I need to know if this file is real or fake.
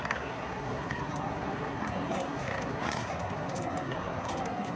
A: fake